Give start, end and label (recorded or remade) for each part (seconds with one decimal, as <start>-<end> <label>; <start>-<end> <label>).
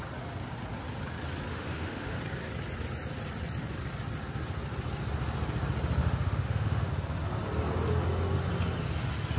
0.0-1.5 recorded; 1.5-2.2 remade; 2.2-6.0 recorded; 6.0-6.9 remade; 6.9-9.4 recorded